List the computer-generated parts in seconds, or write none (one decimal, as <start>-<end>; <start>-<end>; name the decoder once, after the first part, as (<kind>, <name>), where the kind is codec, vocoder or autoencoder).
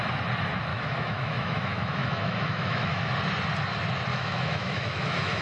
0.7-3.1 (autoencoder, DAC-VAE); 4.1-5.4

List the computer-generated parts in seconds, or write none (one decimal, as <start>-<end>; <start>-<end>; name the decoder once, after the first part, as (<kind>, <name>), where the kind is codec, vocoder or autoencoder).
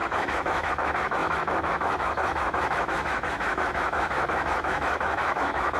0.0-5.8 (autoencoder, DAC-VAE)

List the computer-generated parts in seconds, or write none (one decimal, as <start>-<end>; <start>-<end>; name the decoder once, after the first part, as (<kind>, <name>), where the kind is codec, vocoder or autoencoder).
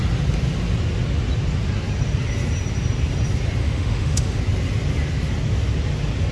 3.6-4.4 (autoencoder, DAC-VAE)